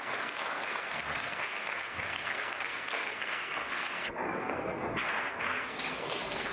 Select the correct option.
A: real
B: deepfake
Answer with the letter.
B